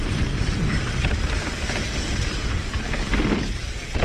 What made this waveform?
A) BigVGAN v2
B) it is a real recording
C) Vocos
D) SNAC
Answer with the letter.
B